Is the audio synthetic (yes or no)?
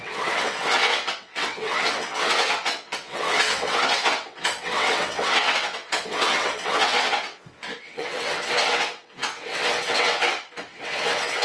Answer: yes